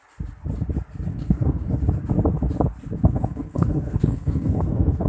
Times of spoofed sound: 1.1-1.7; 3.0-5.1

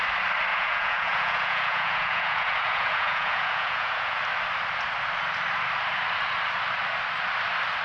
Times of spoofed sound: 0.5-4.2

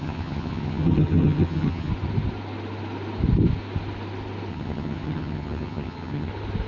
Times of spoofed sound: 0.0-1.9; 4.5-6.3

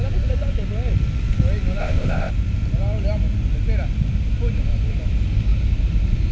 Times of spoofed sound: 1.8-2.3

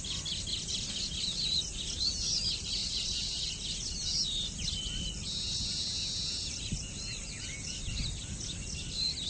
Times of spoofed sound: none

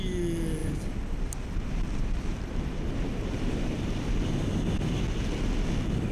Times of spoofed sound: 0.6-4.1

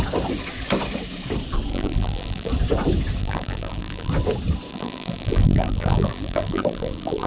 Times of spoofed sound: 1.7-2.5; 3.2-4.1; 4.7-7.3